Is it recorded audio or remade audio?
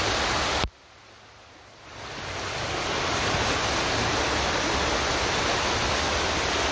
recorded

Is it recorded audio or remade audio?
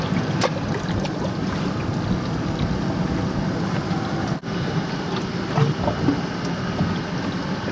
recorded